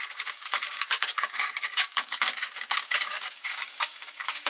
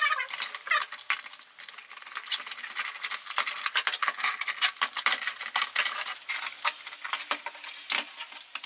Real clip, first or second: second